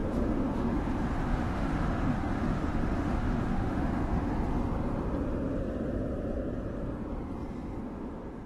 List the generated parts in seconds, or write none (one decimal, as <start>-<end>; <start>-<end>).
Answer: 0.0-4.3; 7.8-8.5